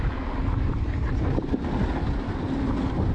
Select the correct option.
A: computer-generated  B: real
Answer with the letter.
B